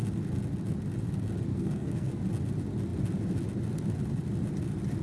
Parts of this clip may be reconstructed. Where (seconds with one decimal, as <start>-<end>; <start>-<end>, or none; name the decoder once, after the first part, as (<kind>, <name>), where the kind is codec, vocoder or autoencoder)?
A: 1.5-2.1 (codec, SNAC)